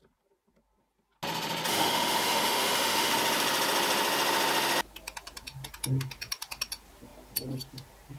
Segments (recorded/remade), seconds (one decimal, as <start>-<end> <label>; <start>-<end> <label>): 0.0-1.7 recorded; 1.7-3.1 remade; 3.1-8.2 recorded